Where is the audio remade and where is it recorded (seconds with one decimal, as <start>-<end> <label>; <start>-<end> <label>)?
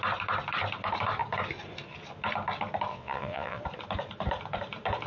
0.0-2.9 recorded; 2.9-3.6 remade; 3.6-5.1 recorded